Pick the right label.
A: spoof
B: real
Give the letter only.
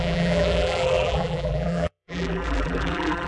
A